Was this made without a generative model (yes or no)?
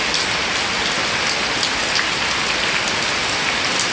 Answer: yes